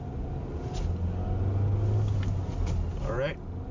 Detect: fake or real real